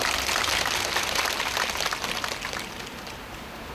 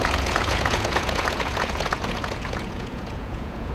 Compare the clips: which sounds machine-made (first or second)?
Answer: second